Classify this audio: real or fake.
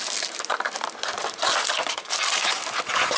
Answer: real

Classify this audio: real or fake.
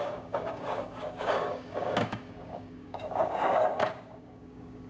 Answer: fake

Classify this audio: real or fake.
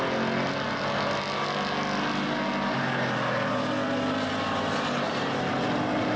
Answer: real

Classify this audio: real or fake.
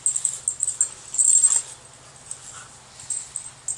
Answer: real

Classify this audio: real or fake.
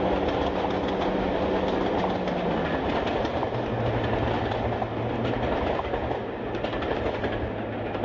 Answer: real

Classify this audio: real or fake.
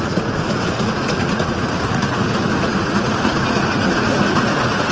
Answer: fake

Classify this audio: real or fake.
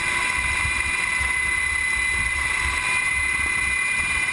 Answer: real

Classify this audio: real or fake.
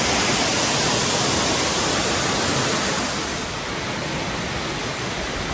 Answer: real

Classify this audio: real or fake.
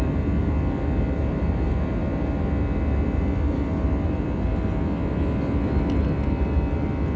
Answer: real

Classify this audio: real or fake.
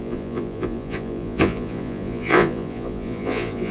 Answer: fake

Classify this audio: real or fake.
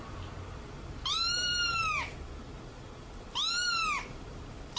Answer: fake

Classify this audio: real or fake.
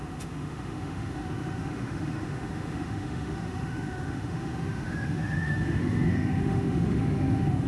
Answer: fake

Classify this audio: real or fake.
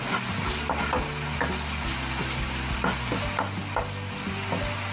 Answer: real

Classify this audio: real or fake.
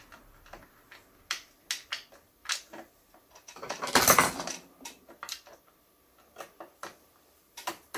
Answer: real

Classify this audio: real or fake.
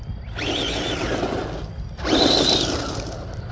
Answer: real